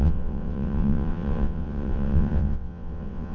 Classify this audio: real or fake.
fake